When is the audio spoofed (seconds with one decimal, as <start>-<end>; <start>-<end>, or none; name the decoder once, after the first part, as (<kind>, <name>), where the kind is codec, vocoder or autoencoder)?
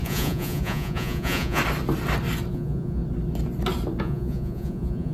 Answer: 0.0-1.6 (vocoder, Vocos); 2.5-3.0; 4.0-5.1